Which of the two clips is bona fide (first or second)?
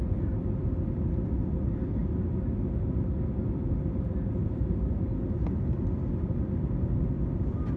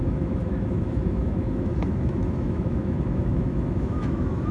first